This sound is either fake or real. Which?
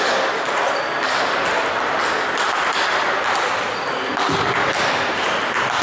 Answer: real